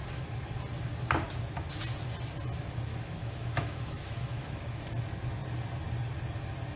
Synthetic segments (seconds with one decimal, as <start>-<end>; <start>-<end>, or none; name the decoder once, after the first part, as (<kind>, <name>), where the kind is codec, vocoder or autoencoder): 2.9-4.8 (autoencoder, DAC-VAE)